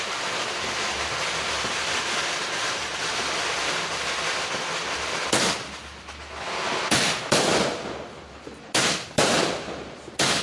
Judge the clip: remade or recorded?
recorded